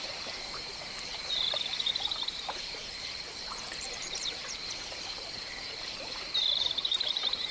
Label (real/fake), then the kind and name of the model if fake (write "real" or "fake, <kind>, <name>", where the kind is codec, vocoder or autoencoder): fake, vocoder, BigVGAN v2